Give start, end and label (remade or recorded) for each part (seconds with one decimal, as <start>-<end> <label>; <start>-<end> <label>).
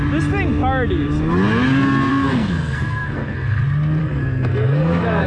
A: 0.0-2.1 recorded; 2.1-3.6 remade; 3.6-4.0 recorded; 4.0-5.3 remade